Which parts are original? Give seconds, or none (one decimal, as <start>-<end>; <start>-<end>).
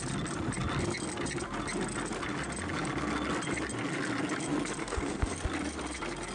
0.0-4.8; 5.3-6.3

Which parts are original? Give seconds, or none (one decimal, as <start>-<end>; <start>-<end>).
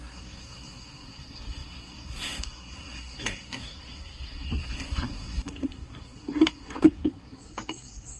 none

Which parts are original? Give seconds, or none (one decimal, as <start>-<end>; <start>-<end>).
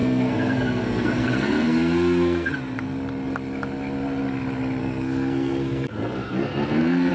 2.5-4.8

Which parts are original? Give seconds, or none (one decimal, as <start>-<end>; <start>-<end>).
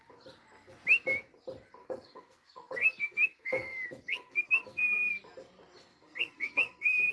0.0-1.8; 5.1-5.9